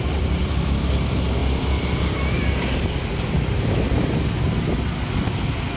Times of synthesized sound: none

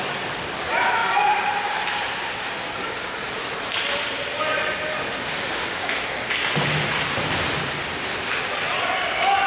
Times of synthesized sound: 1.0-2.1 (vocoder, BigVGAN v2)

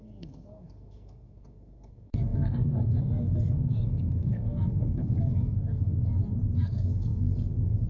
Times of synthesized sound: 0.0-7.9 (codec, SNAC)

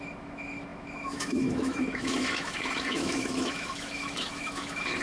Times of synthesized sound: 0.0-5.0 (autoencoder, DAC-VAE)